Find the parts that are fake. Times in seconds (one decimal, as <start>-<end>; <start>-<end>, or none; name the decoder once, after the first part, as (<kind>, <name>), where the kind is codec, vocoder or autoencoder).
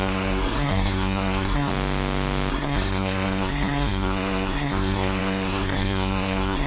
0.0-1.7 (codec, SNAC); 2.5-6.7